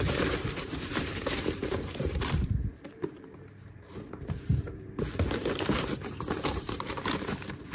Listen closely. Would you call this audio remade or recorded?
remade